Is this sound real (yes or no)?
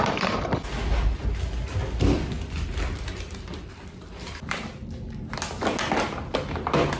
yes